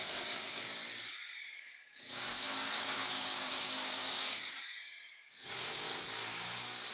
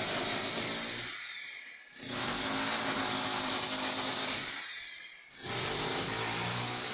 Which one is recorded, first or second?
second